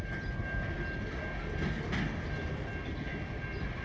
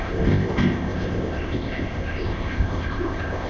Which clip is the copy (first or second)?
second